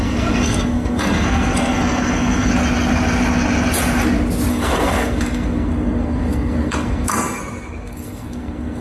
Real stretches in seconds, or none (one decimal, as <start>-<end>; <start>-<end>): 2.5-4.5